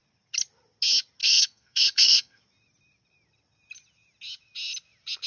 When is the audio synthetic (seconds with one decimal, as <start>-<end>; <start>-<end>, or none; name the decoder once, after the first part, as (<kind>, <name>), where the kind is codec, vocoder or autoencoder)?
1.2-2.4 (codec, SNAC)